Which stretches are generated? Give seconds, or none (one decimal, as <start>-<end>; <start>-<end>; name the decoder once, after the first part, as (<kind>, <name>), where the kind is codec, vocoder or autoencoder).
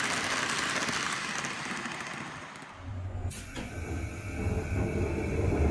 2.9-3.7 (vocoder, Vocos)